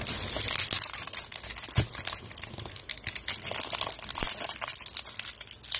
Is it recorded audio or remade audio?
recorded